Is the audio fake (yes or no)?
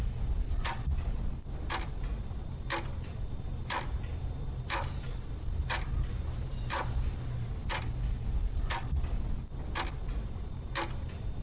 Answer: no